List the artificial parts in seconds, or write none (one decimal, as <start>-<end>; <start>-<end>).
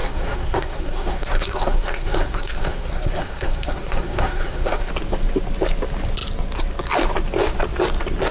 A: 0.0-4.9